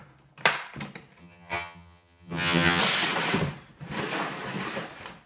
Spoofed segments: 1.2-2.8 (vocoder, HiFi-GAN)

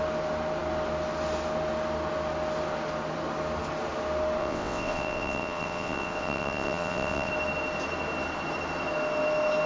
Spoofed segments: 4.4-7.3 (vocoder, WaveNeXt)

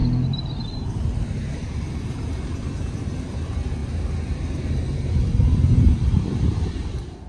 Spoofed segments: 0.7-7.3 (vocoder, BigVGAN v2)

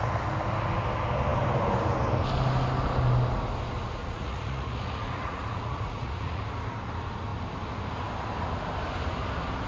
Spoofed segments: 4.0-6.4 (vocoder, Vocos)

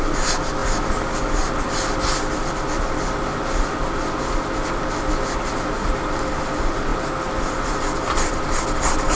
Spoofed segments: none

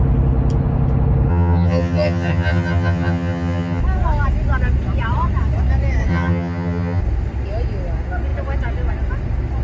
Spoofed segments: 1.3-3.8 (vocoder, HiFi-GAN); 6.1-7.0

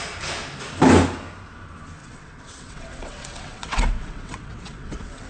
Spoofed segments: 2.0-5.3 (vocoder, WaveNeXt)

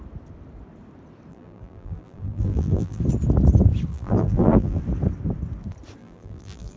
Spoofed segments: 1.3-3.0 (vocoder, BigVGAN v2); 3.9-4.8; 6.0-6.8